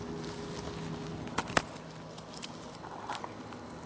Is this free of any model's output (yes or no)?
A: yes